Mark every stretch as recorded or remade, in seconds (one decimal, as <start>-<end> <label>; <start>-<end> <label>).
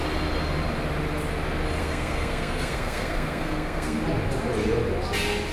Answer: 0.0-1.8 recorded; 1.8-4.0 remade; 4.0-5.5 recorded